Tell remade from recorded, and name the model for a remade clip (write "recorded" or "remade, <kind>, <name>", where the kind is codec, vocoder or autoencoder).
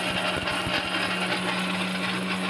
recorded